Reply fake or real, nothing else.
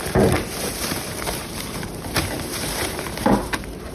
fake